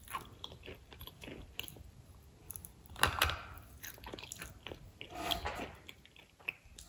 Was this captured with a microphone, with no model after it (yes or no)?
yes